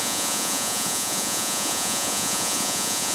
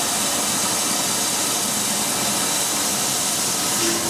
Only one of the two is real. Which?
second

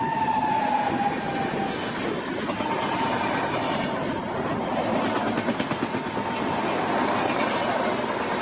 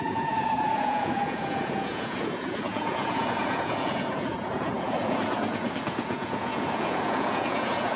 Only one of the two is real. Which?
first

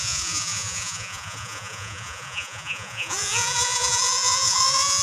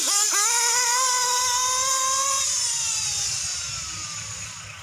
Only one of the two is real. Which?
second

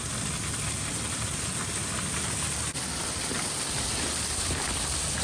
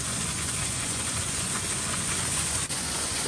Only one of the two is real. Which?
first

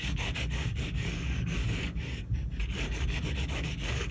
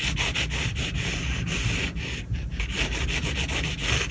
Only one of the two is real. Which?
second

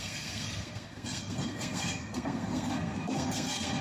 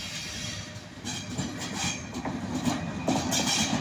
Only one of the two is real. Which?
second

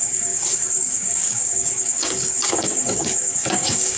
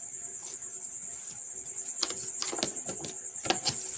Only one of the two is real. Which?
second